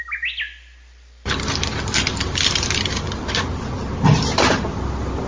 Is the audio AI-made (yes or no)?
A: no